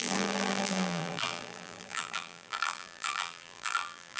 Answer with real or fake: fake